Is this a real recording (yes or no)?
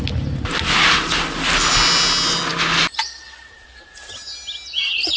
yes